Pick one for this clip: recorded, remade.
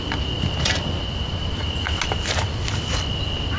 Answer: recorded